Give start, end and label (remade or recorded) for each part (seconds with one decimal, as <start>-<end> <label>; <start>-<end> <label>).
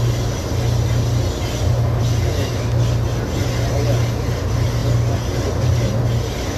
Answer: 0.0-6.6 recorded